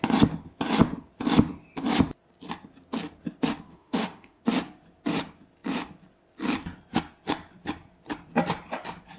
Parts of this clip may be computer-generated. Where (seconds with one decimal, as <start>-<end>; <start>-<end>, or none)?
3.7-4.4